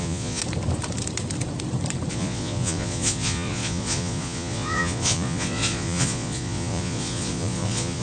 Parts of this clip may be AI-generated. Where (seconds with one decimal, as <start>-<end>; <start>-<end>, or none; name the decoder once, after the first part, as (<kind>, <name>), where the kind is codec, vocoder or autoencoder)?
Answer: 0.0-0.4 (vocoder, Vocos); 2.1-8.0